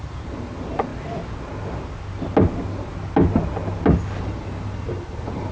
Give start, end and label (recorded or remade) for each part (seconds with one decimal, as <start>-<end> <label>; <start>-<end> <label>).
0.0-0.9 remade; 0.9-4.2 recorded; 4.2-5.5 remade

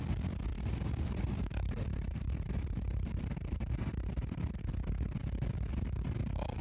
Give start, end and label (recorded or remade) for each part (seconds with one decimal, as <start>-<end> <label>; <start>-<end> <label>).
0.0-0.5 recorded; 0.5-3.8 remade; 3.8-6.6 recorded